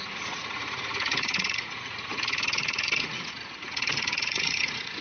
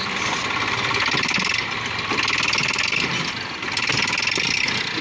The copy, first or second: first